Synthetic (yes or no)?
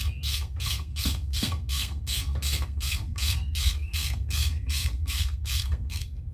yes